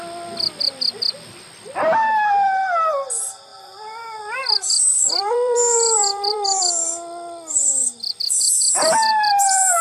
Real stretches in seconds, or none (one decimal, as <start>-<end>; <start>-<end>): 0.0-3.5; 6.6-9.1